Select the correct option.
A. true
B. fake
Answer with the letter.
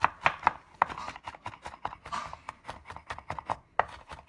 A